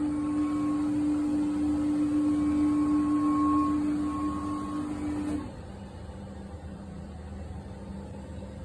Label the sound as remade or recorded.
recorded